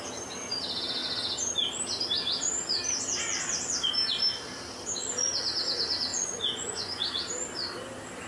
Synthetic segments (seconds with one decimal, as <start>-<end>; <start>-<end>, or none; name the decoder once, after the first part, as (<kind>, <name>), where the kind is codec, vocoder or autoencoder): 6.1-7.1 (vocoder, Vocos)